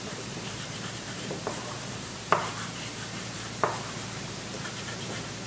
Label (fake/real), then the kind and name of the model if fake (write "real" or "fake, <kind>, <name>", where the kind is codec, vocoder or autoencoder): fake, vocoder, BigVGAN v2